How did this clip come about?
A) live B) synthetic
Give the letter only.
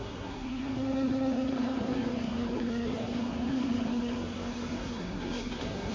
B